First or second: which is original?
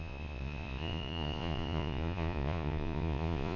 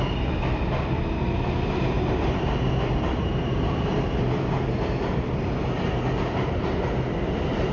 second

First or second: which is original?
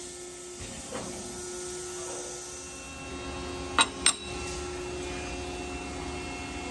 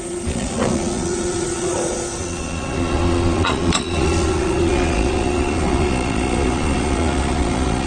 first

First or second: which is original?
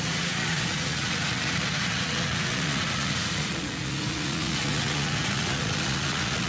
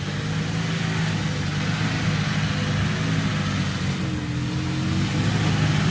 second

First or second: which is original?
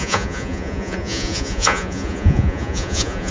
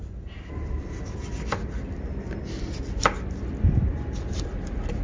second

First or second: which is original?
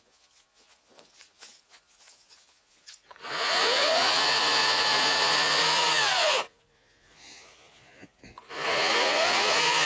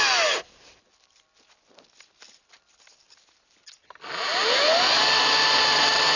second